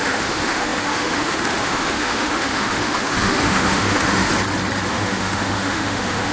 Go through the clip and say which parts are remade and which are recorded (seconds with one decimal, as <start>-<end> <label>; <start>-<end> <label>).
0.0-4.3 remade; 4.3-4.9 recorded; 4.9-6.3 remade